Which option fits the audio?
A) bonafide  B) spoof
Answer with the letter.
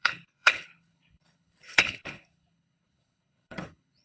B